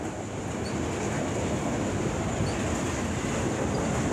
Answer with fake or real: real